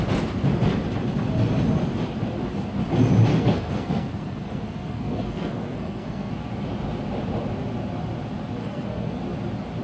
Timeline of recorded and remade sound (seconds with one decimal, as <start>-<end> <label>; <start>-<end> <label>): 0.0-3.3 recorded; 3.3-6.3 remade; 6.3-8.6 recorded; 8.6-9.2 remade; 9.2-9.8 recorded